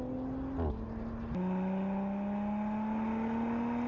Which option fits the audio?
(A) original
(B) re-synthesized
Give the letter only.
A